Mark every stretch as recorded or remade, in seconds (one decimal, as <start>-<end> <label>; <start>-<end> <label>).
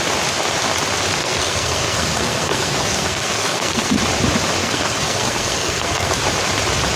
0.0-1.2 recorded; 1.2-4.0 remade; 4.0-4.6 recorded; 4.6-6.2 remade; 6.2-7.0 recorded